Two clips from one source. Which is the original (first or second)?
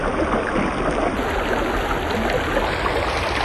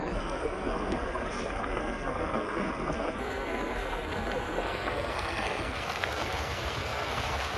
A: first